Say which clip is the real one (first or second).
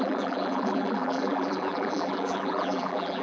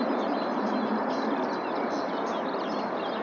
second